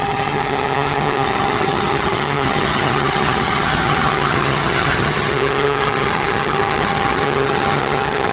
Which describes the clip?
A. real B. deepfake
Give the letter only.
B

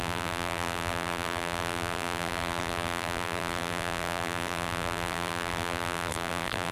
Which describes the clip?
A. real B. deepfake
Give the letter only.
B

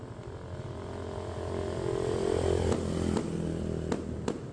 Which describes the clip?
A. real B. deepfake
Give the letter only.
A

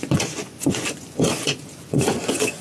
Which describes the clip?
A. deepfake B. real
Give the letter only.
A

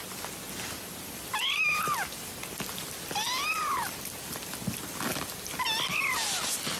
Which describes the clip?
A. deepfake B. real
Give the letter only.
B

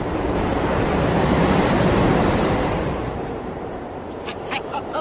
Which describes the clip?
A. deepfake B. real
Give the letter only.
A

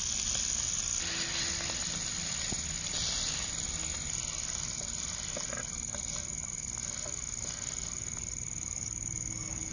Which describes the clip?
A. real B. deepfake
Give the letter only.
A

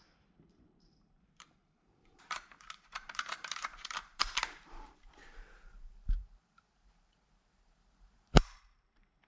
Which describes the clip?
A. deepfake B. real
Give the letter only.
A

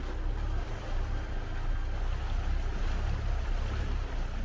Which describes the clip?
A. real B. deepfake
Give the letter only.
A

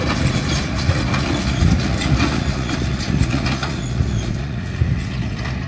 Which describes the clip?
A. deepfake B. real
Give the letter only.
A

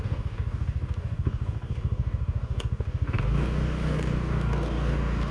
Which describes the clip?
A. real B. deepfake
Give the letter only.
B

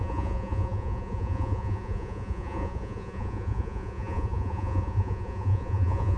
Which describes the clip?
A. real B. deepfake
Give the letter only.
B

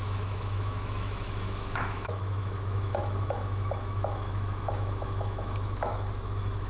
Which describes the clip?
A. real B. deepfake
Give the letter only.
B